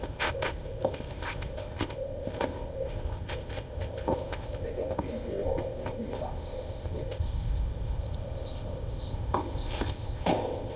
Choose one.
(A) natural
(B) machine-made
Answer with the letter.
B